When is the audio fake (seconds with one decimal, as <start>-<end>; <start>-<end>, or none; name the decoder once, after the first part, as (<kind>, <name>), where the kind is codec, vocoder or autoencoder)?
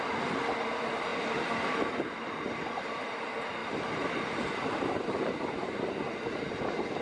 none